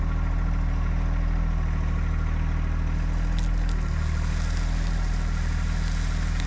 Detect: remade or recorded recorded